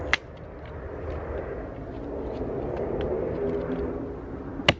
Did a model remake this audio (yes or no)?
no